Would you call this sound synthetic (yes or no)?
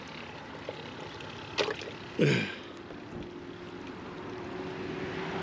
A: no